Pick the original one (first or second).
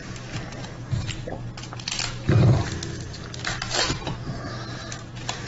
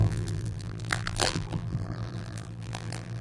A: first